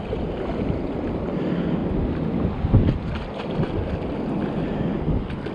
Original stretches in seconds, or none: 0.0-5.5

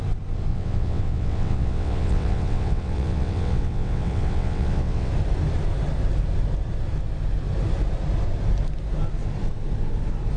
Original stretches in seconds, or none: 0.0-0.5; 5.1-10.4

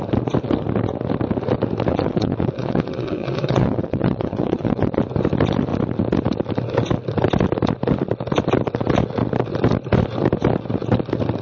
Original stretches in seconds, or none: 0.0-1.9; 5.0-11.4

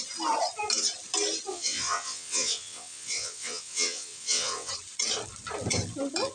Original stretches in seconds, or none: 0.0-1.5; 4.7-6.3

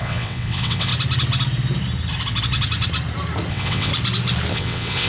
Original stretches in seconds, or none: 0.9-3.5; 3.9-4.5

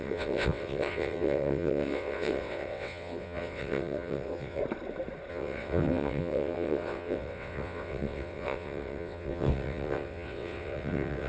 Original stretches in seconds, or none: 4.6-5.3

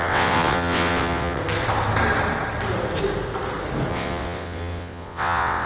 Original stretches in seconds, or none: 1.4-3.9

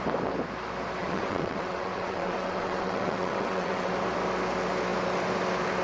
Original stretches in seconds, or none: 0.0-1.0; 3.9-5.8